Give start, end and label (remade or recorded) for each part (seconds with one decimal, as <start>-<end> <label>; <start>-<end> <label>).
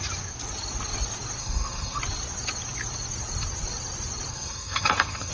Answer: 0.0-1.4 recorded; 1.4-2.0 remade; 2.0-4.3 recorded; 4.3-5.3 remade